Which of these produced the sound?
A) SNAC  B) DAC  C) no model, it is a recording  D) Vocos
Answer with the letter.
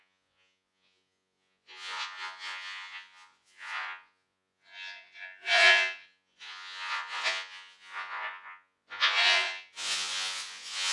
D